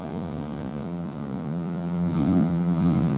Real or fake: fake